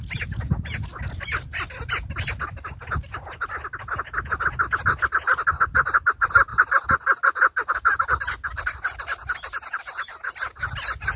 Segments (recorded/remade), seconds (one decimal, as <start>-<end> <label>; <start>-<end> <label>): 0.0-11.2 recorded